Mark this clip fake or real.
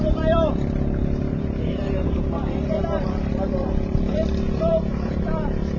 fake